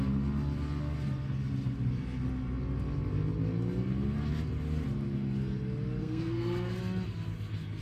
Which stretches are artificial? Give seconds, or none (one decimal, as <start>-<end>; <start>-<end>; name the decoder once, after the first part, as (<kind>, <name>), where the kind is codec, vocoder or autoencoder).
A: 6.0-6.8 (codec, SNAC)